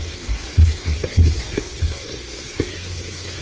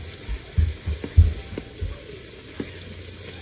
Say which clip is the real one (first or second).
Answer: second